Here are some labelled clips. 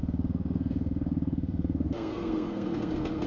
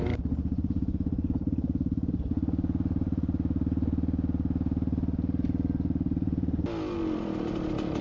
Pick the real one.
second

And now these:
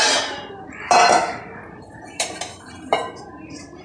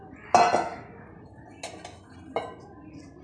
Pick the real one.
second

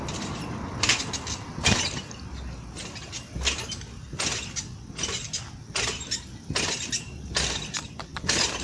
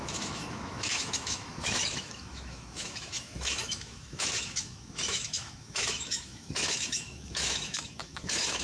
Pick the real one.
first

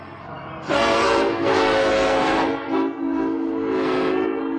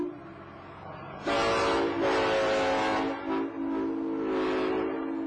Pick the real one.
second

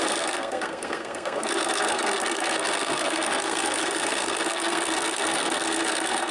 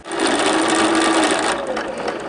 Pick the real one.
second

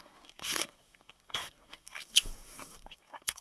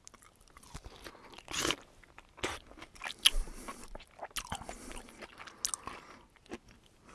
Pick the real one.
second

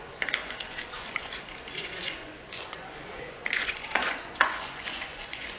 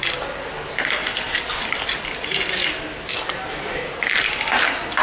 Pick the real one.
second